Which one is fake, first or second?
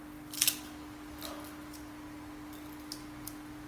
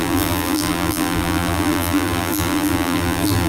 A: second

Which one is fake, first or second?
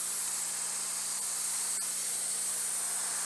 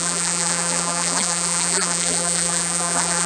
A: second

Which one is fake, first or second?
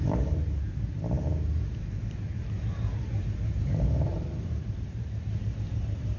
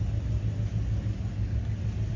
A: first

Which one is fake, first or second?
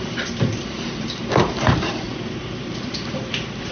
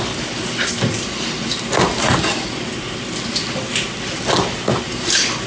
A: first